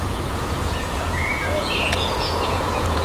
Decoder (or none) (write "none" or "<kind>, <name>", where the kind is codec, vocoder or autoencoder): vocoder, Vocos